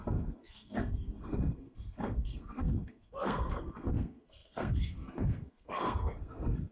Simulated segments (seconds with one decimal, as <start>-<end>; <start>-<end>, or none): 0.0-6.7